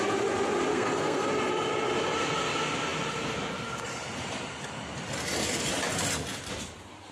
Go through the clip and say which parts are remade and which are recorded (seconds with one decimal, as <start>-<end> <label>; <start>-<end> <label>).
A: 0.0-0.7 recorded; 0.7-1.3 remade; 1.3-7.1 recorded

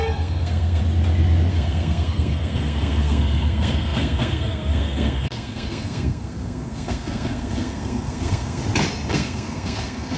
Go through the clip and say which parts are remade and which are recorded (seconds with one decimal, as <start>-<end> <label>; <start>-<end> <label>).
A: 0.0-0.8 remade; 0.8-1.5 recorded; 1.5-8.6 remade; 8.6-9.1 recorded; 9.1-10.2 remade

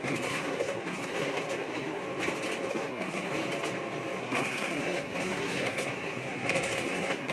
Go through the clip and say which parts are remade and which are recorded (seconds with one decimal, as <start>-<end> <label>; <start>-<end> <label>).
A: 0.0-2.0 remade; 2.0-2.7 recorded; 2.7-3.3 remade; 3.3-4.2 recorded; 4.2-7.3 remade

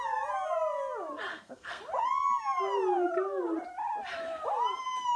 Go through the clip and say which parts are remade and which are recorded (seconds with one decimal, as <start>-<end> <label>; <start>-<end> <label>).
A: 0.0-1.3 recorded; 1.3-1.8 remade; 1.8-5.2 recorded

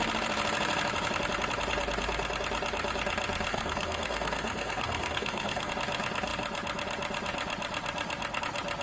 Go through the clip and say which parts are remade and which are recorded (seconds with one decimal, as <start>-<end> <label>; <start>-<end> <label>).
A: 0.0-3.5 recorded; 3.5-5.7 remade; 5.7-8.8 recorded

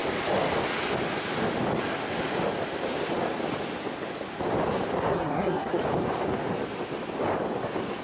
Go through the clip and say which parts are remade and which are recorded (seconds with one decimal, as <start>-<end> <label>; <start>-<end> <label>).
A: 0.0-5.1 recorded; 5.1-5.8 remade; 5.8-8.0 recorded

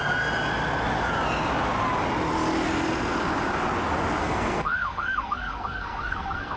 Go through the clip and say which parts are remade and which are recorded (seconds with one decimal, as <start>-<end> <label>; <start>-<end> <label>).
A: 0.0-4.2 recorded; 4.2-6.6 remade

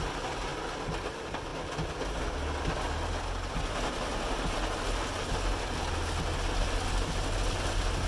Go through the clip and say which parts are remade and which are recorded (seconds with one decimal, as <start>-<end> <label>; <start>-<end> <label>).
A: 0.0-8.1 recorded